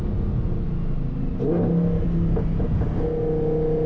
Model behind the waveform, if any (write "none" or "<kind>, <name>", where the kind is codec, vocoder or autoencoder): none